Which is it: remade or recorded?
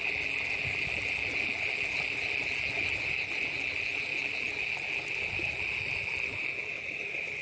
recorded